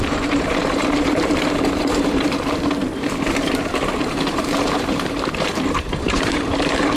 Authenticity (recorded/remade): remade